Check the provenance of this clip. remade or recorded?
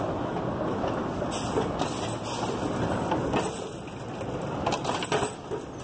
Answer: recorded